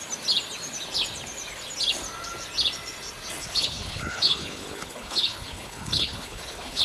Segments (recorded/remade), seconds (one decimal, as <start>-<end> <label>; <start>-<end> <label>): 0.0-3.4 recorded; 3.4-6.8 remade

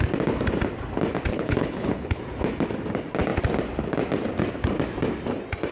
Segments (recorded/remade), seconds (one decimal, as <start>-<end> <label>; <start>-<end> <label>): 0.0-1.3 recorded; 1.3-2.2 remade; 2.2-5.7 recorded

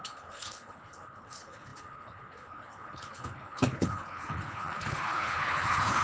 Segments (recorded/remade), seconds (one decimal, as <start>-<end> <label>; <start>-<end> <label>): 0.0-6.0 remade

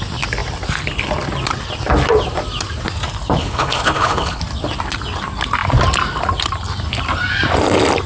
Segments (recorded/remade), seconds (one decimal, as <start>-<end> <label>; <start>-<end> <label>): 0.0-3.4 recorded; 3.4-4.4 remade; 4.4-8.1 recorded